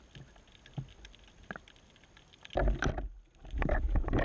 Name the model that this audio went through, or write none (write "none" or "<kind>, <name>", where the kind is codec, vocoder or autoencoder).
none